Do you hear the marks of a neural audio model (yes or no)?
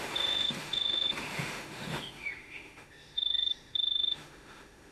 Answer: yes